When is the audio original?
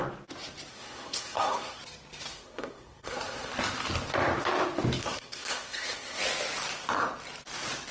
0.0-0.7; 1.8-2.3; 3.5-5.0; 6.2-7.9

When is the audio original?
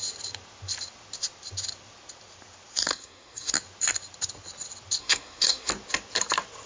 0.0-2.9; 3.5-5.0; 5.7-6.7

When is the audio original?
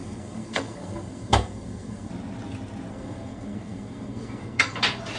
2.1-2.9; 4.8-5.2